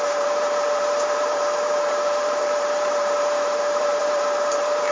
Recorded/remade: remade